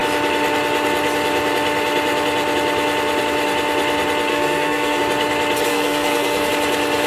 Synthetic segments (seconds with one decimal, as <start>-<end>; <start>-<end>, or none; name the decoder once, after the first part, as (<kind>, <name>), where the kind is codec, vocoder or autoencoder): 4.3-5.0 (codec, SNAC); 5.7-6.5